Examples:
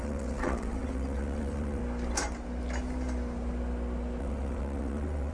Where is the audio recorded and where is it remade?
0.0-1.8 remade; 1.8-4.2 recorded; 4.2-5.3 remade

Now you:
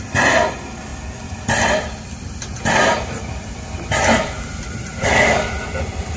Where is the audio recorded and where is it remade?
0.0-6.2 recorded

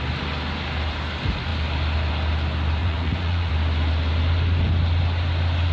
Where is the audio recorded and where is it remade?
0.0-2.8 recorded; 2.8-3.5 remade; 3.5-5.7 recorded

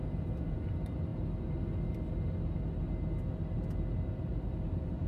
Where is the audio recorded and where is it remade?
0.0-1.1 remade; 1.1-4.2 recorded; 4.2-5.1 remade

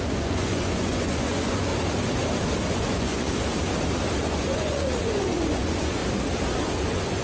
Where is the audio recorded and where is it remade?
0.0-1.7 remade; 1.7-2.7 recorded; 2.7-3.3 remade; 3.3-4.2 recorded; 4.2-6.0 remade; 6.0-6.8 recorded; 6.8-7.2 remade

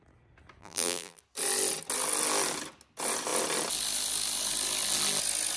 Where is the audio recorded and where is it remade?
0.0-0.6 recorded; 0.6-1.2 remade; 1.2-5.6 recorded

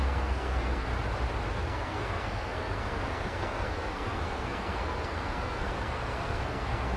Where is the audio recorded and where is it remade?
0.0-0.9 remade; 0.9-1.5 recorded; 1.5-7.0 remade